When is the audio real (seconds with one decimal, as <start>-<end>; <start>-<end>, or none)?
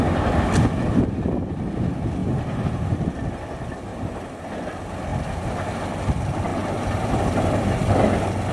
0.0-2.2; 3.0-3.9; 4.5-6.5; 8.0-8.5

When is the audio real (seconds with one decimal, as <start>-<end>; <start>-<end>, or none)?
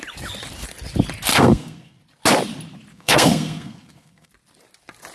0.0-1.3; 2.0-2.9; 4.3-5.1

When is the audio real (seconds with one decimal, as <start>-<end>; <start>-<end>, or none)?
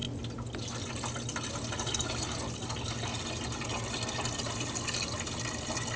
0.0-6.0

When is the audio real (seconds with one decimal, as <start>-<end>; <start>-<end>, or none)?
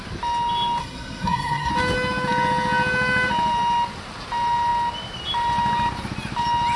0.0-0.8; 1.7-6.8